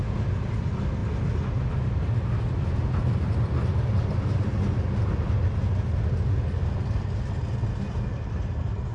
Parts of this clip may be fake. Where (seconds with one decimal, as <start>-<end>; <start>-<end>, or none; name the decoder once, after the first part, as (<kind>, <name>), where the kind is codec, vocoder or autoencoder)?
none